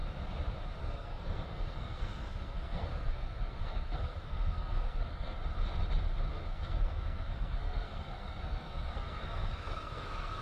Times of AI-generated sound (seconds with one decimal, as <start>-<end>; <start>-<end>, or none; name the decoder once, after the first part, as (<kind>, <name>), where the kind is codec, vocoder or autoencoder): 0.8-5.4 (codec, SNAC); 6.3-10.4